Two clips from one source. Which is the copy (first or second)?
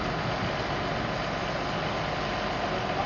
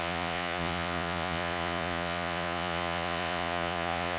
second